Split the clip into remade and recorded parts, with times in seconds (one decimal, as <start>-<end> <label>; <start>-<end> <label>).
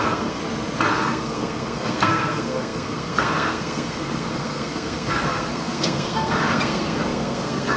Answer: 0.0-0.4 remade; 0.4-0.9 recorded; 0.9-7.8 remade